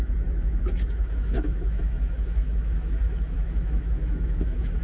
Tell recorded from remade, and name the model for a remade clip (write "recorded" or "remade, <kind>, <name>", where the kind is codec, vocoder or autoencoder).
remade, autoencoder, DAC-VAE